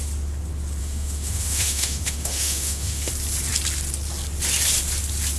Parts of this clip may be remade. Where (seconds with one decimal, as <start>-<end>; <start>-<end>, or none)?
0.8-3.1